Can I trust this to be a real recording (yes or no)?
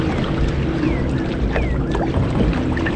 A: yes